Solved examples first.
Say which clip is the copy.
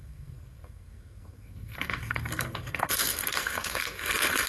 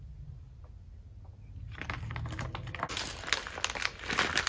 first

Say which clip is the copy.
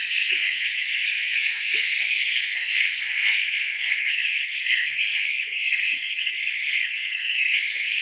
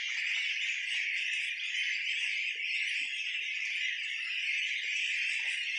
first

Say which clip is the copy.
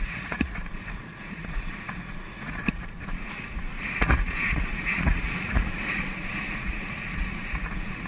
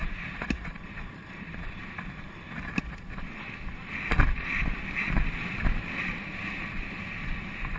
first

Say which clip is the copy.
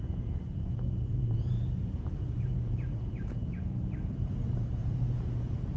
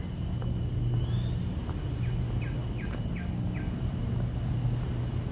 first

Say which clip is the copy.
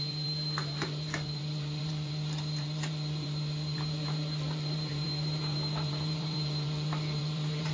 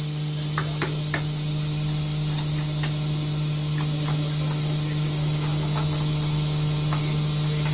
first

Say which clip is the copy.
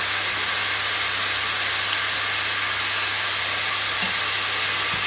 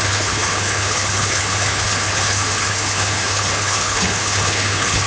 second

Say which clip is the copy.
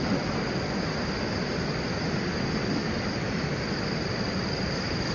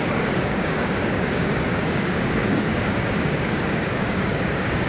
second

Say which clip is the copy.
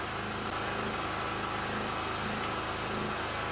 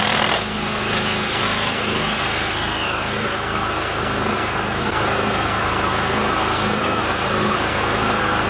second